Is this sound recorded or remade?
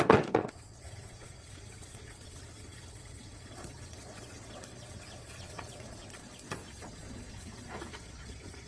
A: remade